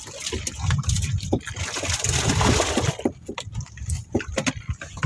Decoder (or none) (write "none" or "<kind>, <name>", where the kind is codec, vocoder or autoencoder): none